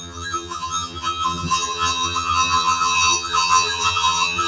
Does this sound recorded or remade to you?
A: remade